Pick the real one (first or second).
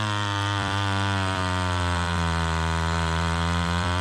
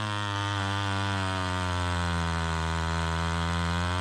second